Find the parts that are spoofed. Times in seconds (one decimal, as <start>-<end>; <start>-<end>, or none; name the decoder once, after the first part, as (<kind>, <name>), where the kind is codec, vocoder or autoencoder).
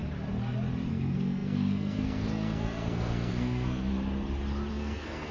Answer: 0.9-3.9 (codec, SNAC); 4.7-5.3